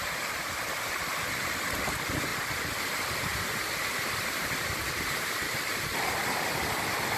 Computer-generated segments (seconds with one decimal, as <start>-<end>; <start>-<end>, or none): none